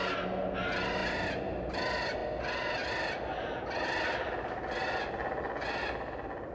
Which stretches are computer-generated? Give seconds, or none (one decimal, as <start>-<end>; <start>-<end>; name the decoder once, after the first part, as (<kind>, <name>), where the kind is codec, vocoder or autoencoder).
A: none